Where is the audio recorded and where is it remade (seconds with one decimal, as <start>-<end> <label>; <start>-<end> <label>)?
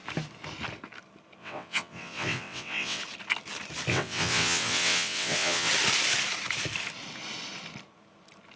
0.0-1.4 recorded; 1.4-3.0 remade; 3.0-3.9 recorded; 3.9-5.7 remade; 5.7-8.6 recorded